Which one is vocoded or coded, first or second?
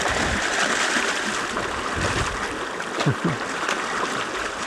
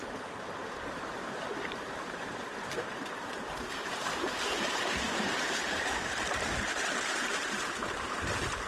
second